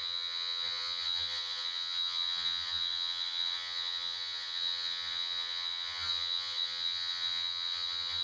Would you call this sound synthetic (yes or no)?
yes